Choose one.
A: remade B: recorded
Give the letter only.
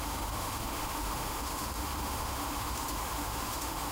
A